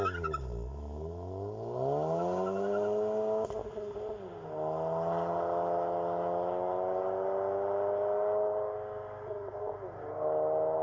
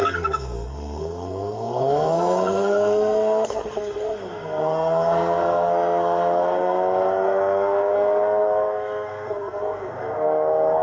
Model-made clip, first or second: second